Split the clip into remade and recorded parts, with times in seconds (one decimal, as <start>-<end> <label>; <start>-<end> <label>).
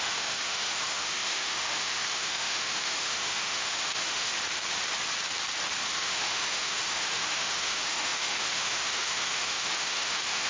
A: 0.0-4.3 remade; 4.3-5.9 recorded; 5.9-10.5 remade